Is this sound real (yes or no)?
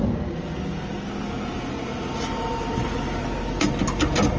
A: yes